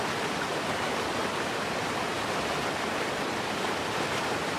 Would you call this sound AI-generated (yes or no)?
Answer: yes